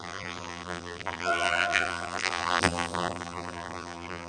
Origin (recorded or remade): remade